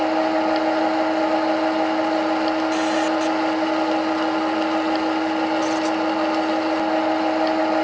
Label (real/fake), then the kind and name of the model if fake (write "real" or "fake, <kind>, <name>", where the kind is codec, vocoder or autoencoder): real